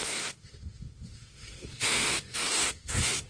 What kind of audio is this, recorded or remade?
remade